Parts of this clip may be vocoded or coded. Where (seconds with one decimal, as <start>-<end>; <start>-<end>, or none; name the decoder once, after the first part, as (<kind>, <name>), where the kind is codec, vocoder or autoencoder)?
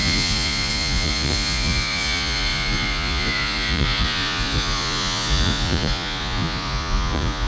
0.0-7.5 (vocoder, Vocos)